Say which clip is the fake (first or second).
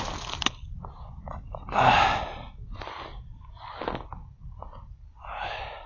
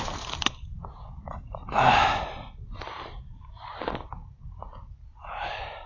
second